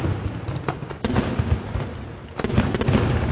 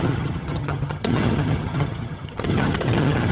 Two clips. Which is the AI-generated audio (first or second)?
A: second